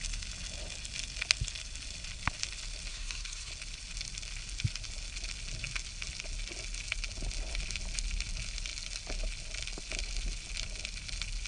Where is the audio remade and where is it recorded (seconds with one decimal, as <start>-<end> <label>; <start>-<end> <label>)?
0.0-2.9 recorded; 2.9-3.5 remade; 3.5-11.5 recorded